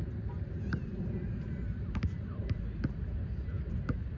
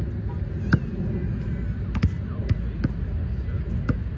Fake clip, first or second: first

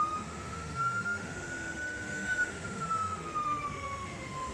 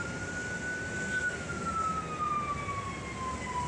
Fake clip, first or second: first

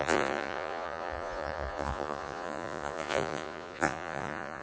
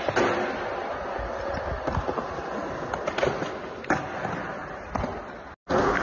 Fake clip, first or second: first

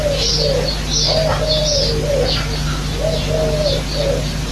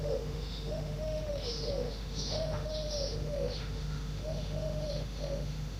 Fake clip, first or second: second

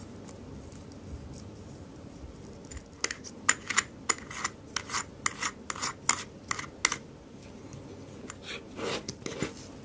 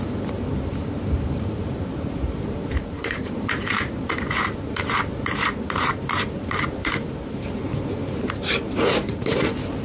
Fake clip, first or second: second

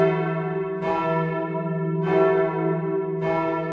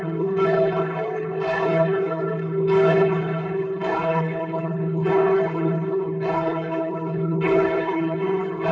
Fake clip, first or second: second